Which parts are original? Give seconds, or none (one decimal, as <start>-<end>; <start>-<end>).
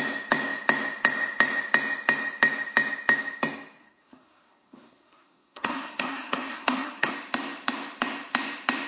0.0-3.8; 7.1-8.9